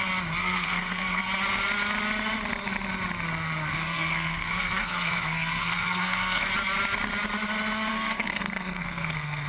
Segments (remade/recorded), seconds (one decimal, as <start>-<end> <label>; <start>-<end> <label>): 0.0-0.4 recorded; 0.4-1.2 remade; 1.2-3.7 recorded; 3.7-6.5 remade; 6.5-7.9 recorded; 7.9-9.5 remade